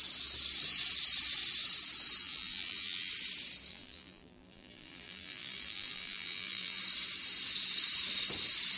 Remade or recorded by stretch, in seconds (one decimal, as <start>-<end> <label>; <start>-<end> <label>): 0.0-2.2 recorded; 2.2-3.1 remade; 3.1-3.7 recorded; 3.7-6.8 remade; 6.8-8.8 recorded